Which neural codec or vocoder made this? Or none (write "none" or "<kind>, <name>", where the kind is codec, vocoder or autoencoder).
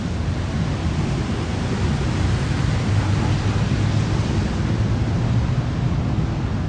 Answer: none